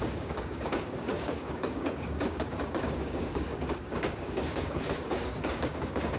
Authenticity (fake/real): fake